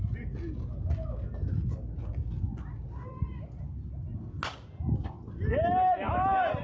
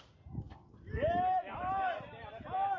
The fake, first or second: second